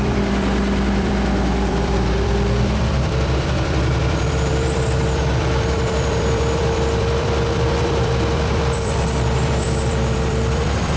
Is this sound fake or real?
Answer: fake